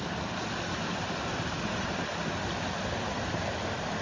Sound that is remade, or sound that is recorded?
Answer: recorded